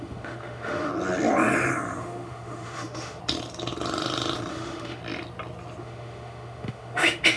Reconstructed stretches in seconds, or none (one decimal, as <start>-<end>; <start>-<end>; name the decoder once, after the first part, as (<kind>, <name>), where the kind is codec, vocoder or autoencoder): 0.0-0.9 (autoencoder, DAC-VAE); 2.0-3.2; 4.5-5.0; 5.8-7.4